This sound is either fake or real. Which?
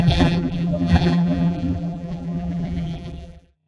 fake